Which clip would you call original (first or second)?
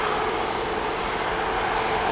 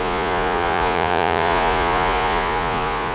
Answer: first